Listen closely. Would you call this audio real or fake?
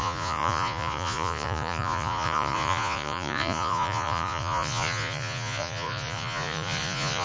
fake